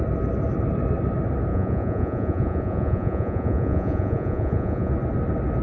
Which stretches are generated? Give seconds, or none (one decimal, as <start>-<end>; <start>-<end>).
1.5-4.9